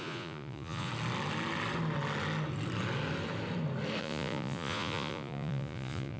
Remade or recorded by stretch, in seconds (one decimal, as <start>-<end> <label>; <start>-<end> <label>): 0.0-0.9 remade; 0.9-4.0 recorded; 4.0-6.2 remade